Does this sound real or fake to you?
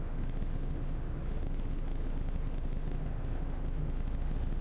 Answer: fake